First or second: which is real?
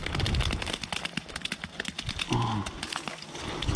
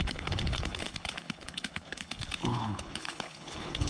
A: first